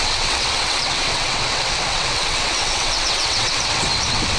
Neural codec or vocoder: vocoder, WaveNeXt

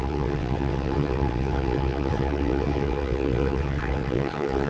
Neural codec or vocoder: vocoder, WaveNeXt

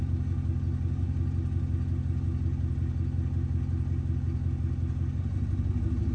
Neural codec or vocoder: none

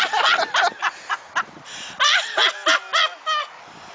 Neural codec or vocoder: none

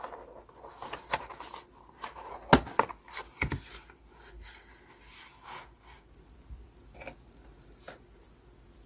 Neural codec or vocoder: none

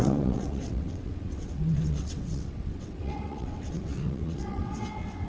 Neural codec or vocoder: vocoder, WaveNeXt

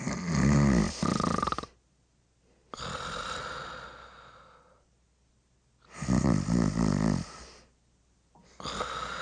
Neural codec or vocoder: none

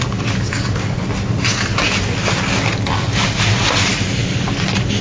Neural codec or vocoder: none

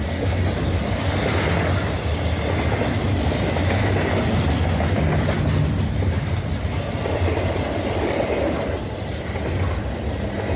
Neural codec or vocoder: none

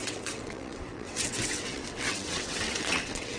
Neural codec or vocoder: vocoder, WaveNeXt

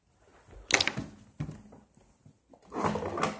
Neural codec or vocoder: none